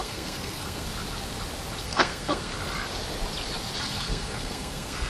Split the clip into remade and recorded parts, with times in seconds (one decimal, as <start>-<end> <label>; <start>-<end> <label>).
0.0-0.9 remade; 0.9-1.8 recorded; 1.8-2.5 remade; 2.5-3.8 recorded; 3.8-5.1 remade